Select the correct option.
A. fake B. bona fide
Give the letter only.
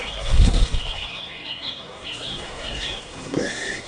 A